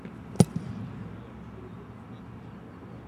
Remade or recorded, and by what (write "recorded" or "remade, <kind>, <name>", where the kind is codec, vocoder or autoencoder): recorded